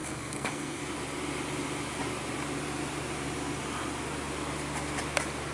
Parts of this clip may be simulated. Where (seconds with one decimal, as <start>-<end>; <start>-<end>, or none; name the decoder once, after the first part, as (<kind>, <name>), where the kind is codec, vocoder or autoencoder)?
0.0-0.8 (codec, SNAC)